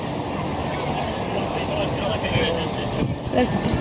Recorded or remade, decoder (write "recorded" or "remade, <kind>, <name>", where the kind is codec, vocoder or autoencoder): recorded